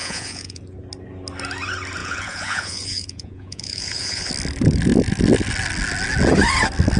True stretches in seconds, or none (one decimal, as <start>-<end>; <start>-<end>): 0.6-2.0; 4.3-7.0